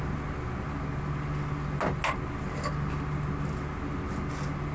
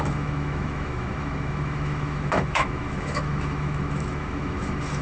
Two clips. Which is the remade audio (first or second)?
second